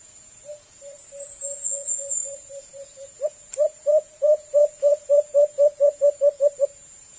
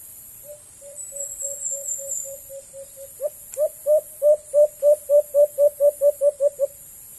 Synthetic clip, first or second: first